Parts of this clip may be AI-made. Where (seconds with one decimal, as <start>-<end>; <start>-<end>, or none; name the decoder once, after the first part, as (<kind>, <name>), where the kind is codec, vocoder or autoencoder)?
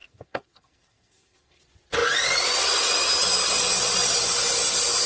0.0-1.6 (codec, SNAC)